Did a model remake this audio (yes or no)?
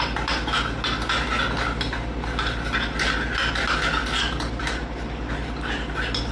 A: no